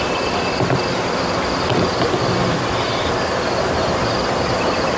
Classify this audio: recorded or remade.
recorded